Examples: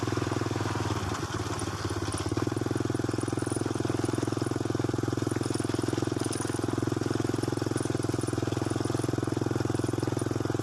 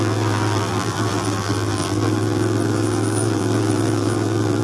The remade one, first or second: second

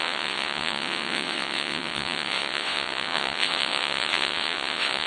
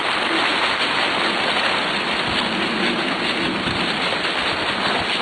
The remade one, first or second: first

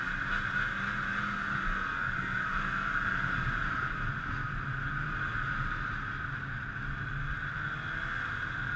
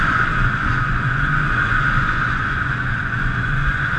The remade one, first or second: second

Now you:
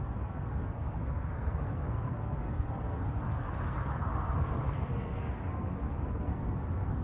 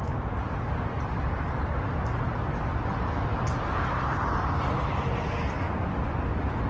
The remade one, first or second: first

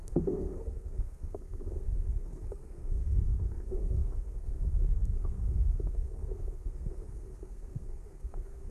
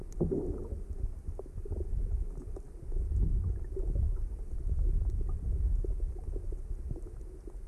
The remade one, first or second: first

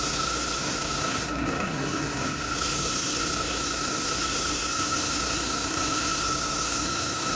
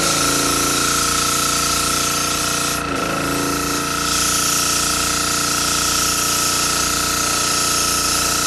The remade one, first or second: first